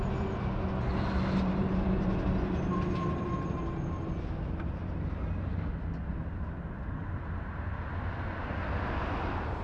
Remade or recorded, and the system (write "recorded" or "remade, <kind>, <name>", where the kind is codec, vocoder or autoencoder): recorded